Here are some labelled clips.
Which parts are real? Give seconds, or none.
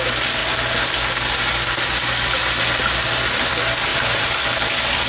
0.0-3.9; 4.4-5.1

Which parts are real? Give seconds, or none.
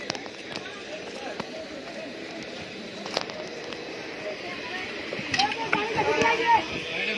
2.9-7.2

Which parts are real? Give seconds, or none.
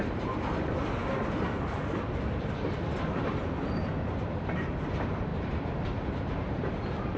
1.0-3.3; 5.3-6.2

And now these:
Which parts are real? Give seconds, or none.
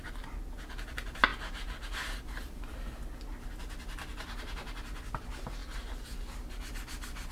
0.0-7.3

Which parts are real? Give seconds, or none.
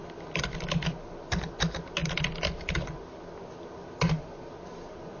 0.0-5.2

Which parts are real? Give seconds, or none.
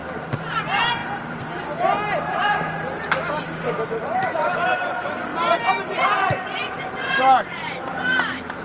0.0-0.6; 1.0-3.4; 5.3-6.7; 7.6-8.6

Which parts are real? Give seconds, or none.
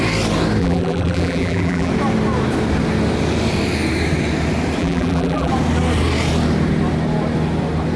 0.0-0.6; 1.9-4.8; 5.5-8.0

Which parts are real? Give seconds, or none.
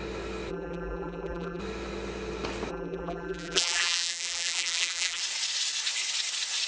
0.0-0.5; 1.6-2.7; 5.2-6.7